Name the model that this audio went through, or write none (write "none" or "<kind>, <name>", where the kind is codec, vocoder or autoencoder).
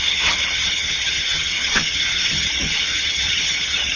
vocoder, HiFi-GAN